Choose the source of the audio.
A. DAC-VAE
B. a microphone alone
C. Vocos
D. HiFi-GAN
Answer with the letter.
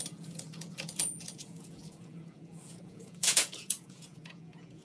C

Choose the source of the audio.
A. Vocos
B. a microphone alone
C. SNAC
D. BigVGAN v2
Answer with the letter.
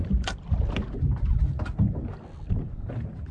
B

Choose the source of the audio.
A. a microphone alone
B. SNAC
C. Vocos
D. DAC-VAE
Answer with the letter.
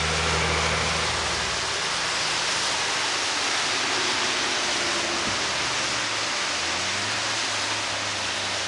A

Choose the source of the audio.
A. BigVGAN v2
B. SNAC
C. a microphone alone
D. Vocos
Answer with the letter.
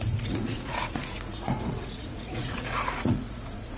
D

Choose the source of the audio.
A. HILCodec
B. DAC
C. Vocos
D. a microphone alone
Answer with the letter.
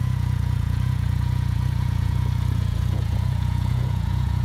C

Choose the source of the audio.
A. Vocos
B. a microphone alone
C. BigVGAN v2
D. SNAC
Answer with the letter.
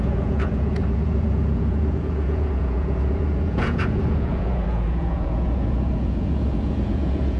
A